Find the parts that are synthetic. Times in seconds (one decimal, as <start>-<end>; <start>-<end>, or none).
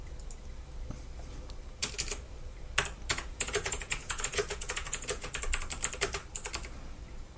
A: 3.1-5.3